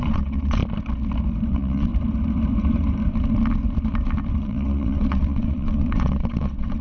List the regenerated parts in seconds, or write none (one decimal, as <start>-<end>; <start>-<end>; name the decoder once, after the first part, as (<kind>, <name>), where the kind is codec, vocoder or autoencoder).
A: 0.0-0.6 (vocoder, WaveNeXt); 1.5-1.9; 4.4-6.8